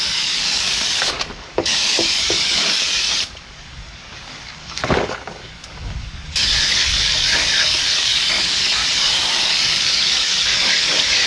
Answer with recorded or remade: remade